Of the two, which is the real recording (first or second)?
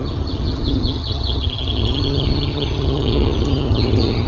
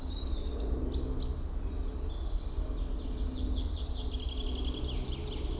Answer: second